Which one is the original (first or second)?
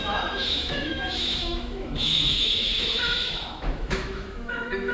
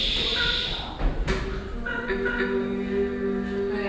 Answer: second